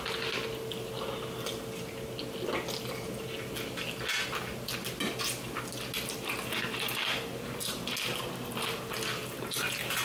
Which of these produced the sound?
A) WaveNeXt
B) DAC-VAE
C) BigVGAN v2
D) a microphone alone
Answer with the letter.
D